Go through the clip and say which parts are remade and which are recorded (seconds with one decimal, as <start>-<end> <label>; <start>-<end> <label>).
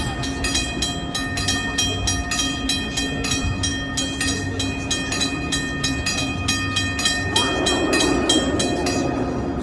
0.0-9.6 recorded